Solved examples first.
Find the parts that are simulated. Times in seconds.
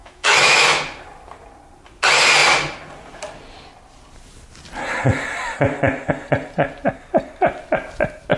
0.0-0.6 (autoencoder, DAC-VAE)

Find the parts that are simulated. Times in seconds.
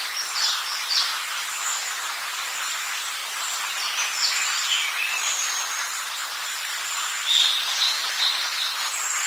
none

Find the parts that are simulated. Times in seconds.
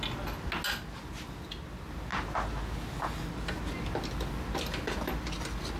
none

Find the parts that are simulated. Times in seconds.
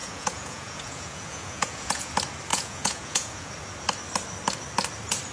0.0-2.1 (vocoder, Vocos); 2.5-3.5